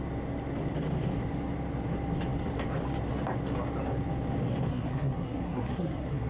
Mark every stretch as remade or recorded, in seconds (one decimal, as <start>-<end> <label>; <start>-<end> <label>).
0.0-4.7 recorded; 4.7-6.3 remade